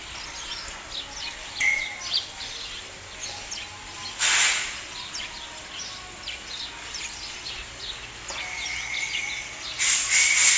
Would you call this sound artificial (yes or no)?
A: no